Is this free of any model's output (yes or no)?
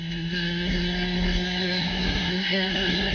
no